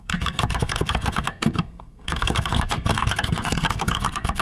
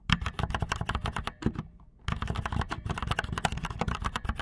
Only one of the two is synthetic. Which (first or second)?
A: first